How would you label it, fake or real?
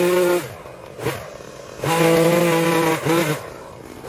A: real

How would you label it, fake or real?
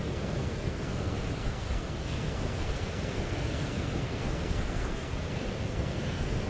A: fake